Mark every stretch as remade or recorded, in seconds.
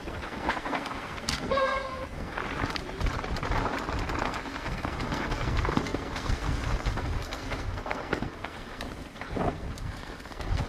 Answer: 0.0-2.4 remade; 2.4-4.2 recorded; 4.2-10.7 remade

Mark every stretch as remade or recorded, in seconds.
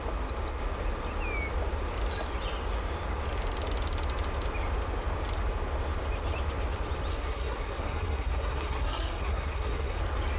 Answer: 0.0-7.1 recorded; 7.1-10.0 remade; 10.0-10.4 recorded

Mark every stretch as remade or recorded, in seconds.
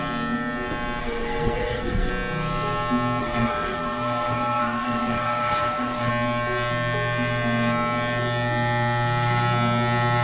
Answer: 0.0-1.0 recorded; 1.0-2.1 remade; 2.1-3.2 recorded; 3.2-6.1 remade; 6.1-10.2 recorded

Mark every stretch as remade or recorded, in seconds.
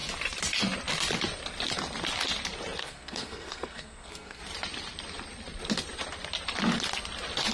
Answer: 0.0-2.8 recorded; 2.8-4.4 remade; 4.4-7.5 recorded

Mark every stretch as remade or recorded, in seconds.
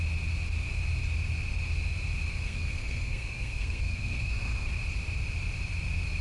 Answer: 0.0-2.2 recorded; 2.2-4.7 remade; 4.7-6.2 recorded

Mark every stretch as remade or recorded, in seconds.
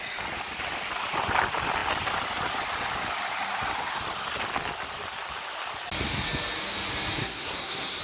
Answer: 0.0-7.2 recorded; 7.2-8.0 remade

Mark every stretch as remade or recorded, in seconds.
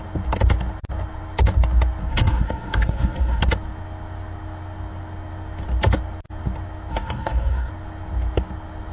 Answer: 0.0-2.1 recorded; 2.1-3.4 remade; 3.4-6.9 recorded; 6.9-7.7 remade; 7.7-8.9 recorded